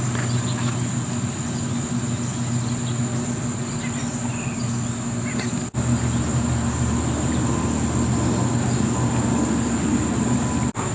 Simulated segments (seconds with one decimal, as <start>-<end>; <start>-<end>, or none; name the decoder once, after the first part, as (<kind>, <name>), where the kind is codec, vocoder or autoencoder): none